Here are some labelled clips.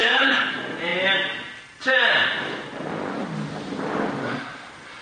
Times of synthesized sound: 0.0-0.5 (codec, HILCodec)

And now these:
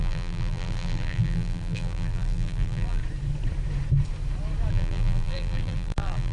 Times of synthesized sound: 0.0-3.0 (vocoder, BigVGAN v2); 4.7-6.3

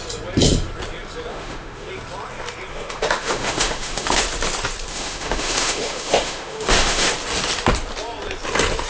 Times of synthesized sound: 1.3-1.9 (autoencoder, DAC-VAE); 2.7-4.2; 4.9-7.1

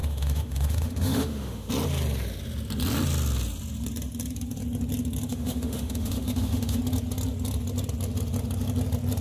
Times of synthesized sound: 0.0-1.7 (autoencoder, DAC-VAE); 5.3-6.8

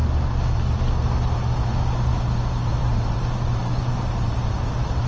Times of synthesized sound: 2.8-5.1 (vocoder, BigVGAN v2)

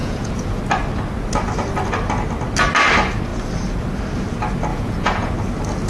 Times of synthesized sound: 0.0-0.6 (vocoder, Vocos); 4.7-5.3

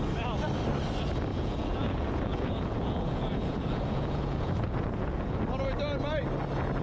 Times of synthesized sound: 1.3-5.4 (vocoder, Vocos)